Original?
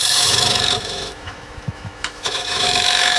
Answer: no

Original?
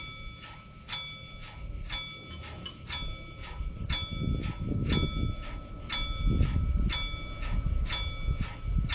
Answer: yes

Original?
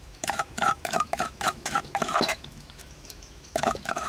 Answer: no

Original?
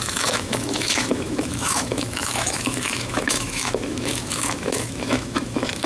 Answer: no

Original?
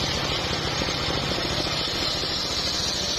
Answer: yes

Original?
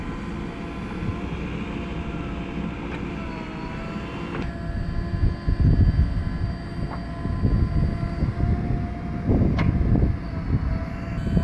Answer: yes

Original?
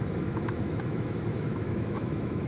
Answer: no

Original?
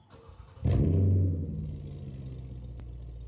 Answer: yes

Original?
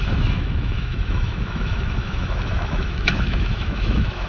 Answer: no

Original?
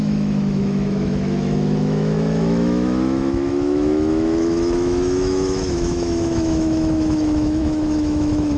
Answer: no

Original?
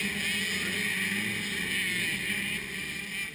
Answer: yes